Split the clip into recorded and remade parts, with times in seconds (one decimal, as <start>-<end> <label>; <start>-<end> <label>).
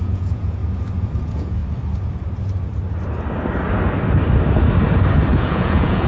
0.0-0.6 remade; 0.6-1.2 recorded; 1.2-1.6 remade; 1.6-5.3 recorded; 5.3-6.1 remade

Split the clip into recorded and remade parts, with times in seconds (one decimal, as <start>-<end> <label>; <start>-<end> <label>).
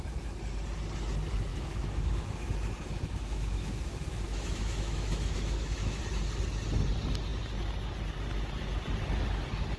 0.0-1.5 recorded; 1.5-6.0 remade; 6.0-9.8 recorded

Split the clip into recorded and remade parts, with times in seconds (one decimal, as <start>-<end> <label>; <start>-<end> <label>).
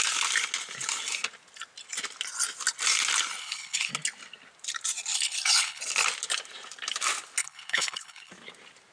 0.0-3.4 recorded; 3.4-3.9 remade; 3.9-5.1 recorded; 5.1-5.8 remade; 5.8-7.4 recorded; 7.4-8.3 remade; 8.3-8.9 recorded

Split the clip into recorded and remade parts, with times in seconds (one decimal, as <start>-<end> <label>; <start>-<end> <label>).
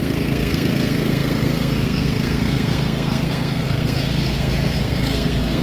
0.0-5.6 remade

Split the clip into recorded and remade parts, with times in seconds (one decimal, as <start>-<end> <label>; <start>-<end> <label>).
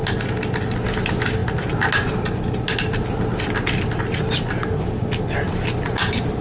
0.0-6.4 recorded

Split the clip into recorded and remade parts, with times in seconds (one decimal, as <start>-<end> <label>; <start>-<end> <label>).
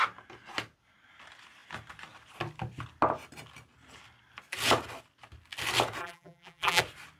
0.0-6.0 recorded; 6.0-6.8 remade; 6.8-7.2 recorded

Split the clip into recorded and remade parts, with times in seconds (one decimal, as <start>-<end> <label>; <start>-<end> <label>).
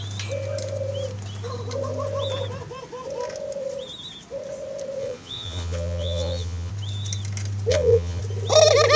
0.0-5.0 recorded; 5.0-6.7 remade; 6.7-7.7 recorded; 7.7-8.2 remade; 8.2-9.0 recorded